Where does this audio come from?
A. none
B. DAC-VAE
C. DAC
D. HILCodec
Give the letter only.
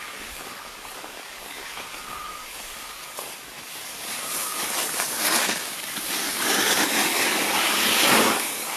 C